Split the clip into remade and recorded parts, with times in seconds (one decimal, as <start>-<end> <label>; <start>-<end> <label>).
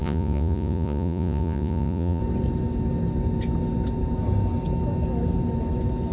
0.0-2.2 remade; 2.2-6.1 recorded